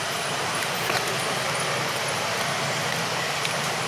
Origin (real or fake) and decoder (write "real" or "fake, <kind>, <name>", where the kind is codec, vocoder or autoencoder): real